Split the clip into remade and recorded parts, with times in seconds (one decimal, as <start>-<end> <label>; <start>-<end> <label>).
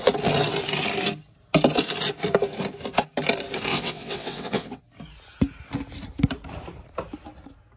0.0-3.7 recorded; 3.7-4.8 remade; 4.8-7.8 recorded